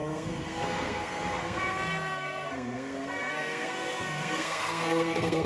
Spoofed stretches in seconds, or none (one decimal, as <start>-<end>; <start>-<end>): 0.0-5.5